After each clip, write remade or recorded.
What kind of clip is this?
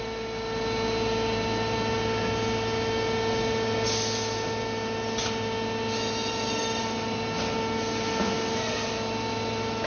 recorded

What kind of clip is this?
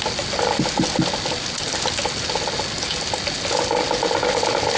recorded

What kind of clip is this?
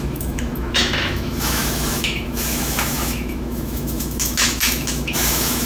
remade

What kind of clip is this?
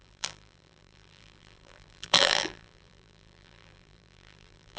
remade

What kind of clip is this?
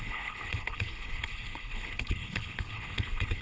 remade